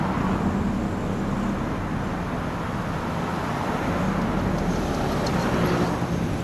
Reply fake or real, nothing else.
real